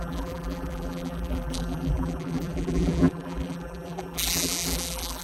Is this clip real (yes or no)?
no